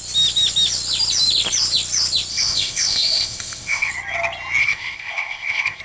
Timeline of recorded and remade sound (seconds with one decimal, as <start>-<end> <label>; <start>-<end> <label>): 0.0-2.3 recorded; 2.3-3.9 remade; 3.9-4.6 recorded; 4.6-5.8 remade